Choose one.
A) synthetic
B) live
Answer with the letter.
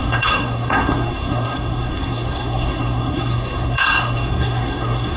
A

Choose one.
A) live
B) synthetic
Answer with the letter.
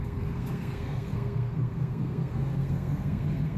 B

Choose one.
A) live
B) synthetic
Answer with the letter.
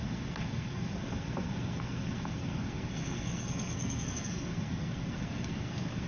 B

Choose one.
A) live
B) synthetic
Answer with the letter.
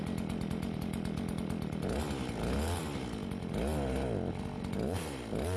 A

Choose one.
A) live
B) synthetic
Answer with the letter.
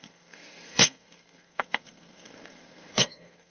B